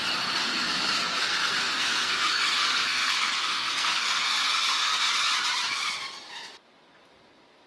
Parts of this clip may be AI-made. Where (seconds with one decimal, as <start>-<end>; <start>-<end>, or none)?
0.4-5.0